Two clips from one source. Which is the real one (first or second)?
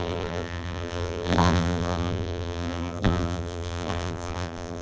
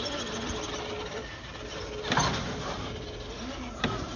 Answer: second